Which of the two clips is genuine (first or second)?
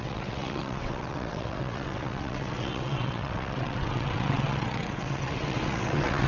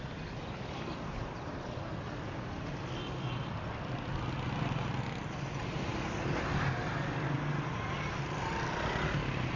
second